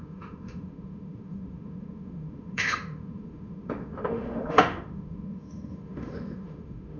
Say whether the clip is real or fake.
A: fake